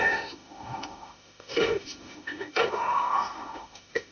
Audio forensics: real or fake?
fake